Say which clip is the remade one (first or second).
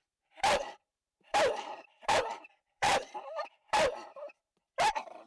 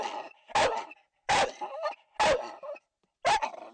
first